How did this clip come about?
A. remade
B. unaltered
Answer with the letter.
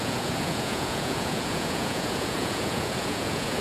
A